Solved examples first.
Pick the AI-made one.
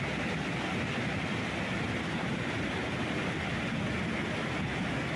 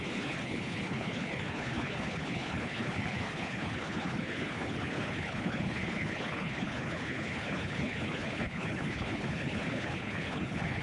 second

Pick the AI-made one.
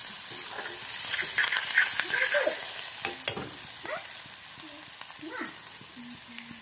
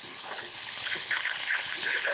second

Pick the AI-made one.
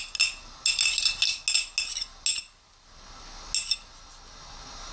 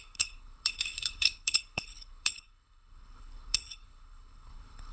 second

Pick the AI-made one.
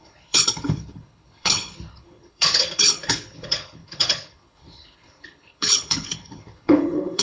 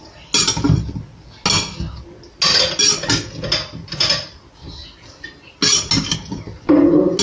first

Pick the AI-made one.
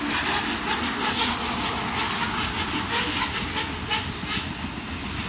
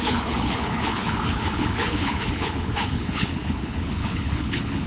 second